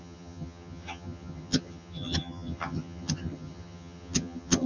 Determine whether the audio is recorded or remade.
remade